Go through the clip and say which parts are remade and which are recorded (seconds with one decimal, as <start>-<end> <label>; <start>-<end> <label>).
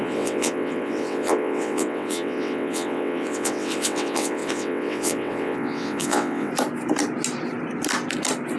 0.0-6.5 remade; 6.5-8.6 recorded